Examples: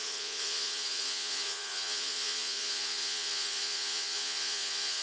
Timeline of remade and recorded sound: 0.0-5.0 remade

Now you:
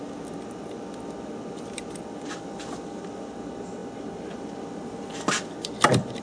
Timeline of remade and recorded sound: 0.0-6.2 remade

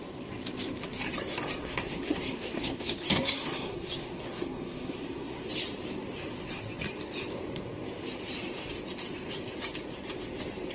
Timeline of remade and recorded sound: 0.0-1.6 recorded; 1.6-5.5 remade; 5.5-10.7 recorded

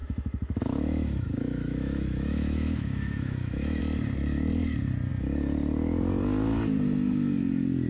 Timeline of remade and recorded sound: 0.0-3.8 remade; 3.8-7.9 recorded

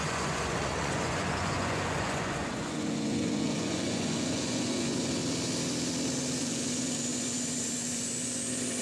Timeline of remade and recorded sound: 0.0-5.2 remade; 5.2-6.4 recorded; 6.4-8.8 remade

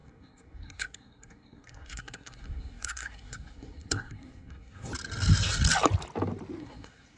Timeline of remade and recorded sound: 0.0-4.9 remade; 4.9-6.6 recorded; 6.6-7.2 remade

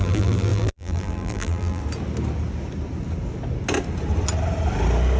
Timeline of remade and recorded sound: 0.0-1.8 remade; 1.8-5.2 recorded

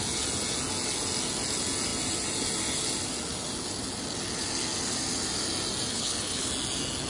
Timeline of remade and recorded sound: 0.0-5.9 recorded; 5.9-6.5 remade; 6.5-7.1 recorded